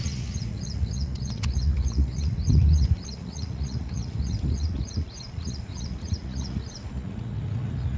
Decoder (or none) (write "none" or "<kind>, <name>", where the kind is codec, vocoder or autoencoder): vocoder, Vocos